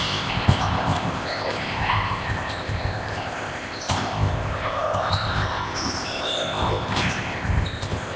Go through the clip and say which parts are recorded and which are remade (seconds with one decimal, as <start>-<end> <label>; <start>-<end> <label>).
0.0-8.2 remade